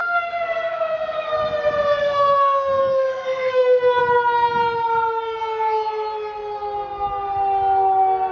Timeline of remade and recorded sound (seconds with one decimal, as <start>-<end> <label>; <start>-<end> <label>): 0.0-1.3 remade; 1.3-2.0 recorded; 2.0-4.0 remade; 4.0-8.3 recorded